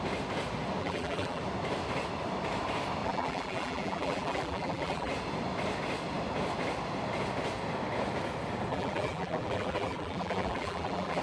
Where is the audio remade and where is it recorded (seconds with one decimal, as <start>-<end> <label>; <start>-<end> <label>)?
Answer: 0.0-0.8 recorded; 0.8-1.4 remade; 1.4-3.0 recorded; 3.0-5.1 remade; 5.1-8.7 recorded; 8.7-11.2 remade